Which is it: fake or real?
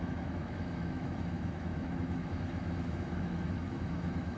fake